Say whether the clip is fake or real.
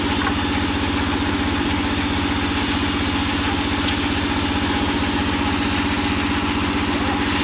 real